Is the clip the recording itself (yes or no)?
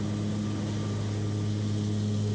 yes